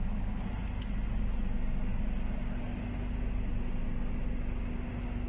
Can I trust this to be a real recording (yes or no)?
yes